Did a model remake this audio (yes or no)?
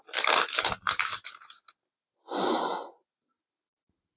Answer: no